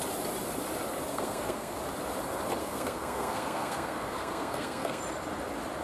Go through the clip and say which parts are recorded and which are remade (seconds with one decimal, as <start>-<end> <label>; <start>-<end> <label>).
0.0-1.1 recorded; 1.1-1.8 remade; 1.8-2.6 recorded; 2.6-5.0 remade; 5.0-5.8 recorded